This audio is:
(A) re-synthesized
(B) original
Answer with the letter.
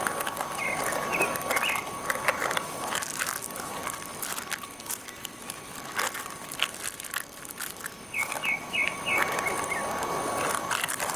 B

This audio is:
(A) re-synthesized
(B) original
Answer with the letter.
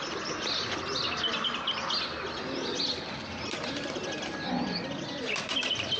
B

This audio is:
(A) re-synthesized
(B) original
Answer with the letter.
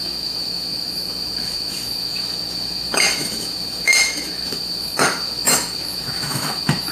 A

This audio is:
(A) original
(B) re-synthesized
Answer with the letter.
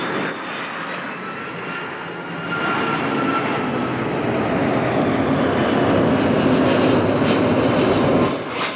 A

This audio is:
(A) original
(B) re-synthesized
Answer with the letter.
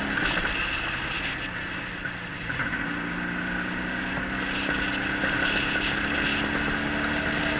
A